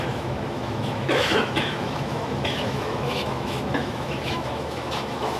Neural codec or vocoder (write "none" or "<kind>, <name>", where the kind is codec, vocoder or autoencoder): autoencoder, DAC-VAE